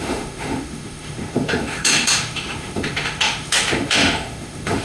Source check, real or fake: fake